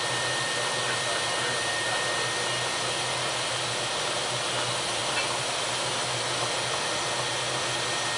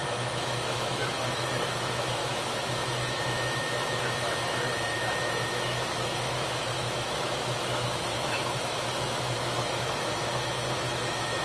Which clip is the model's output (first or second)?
second